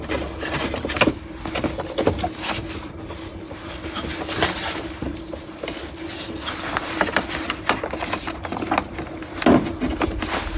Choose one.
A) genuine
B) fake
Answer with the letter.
A